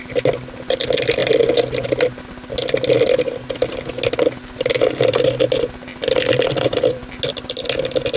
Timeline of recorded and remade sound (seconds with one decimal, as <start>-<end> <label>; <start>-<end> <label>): 0.0-5.9 recorded; 5.9-7.1 remade; 7.1-8.2 recorded